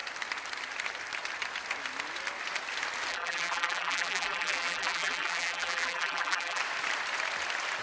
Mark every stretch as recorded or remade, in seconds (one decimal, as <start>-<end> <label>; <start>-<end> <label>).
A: 0.0-3.1 recorded; 3.1-6.6 remade; 6.6-7.8 recorded